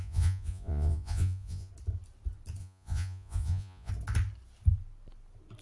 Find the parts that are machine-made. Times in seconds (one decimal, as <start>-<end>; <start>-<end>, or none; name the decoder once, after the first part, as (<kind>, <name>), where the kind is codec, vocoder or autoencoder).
0.0-1.7 (vocoder, Vocos); 2.6-3.9